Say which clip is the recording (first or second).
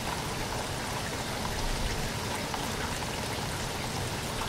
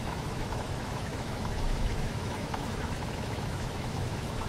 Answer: first